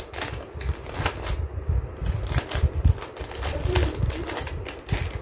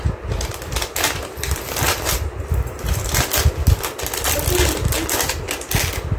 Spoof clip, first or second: first